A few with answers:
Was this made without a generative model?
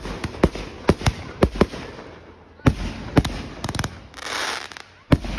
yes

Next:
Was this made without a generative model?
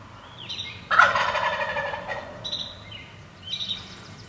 yes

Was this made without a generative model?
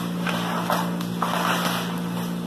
yes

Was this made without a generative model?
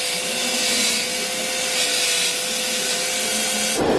yes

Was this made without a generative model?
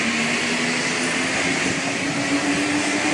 yes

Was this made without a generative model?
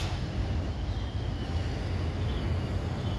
yes